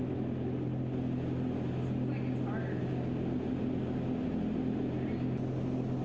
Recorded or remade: recorded